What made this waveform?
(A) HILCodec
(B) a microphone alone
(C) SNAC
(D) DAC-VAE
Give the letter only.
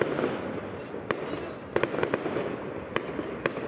B